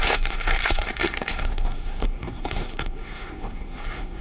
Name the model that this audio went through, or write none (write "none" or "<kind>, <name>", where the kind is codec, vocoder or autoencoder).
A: codec, SNAC